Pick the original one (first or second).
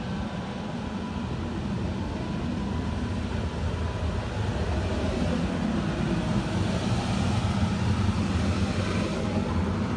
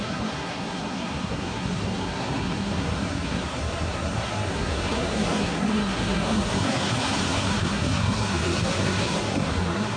first